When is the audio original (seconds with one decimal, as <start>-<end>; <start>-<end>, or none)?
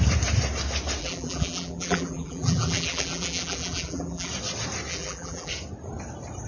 0.0-1.0; 4.3-4.9; 5.5-6.5